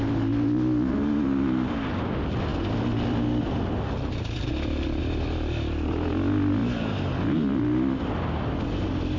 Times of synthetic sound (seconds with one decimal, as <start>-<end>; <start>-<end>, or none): none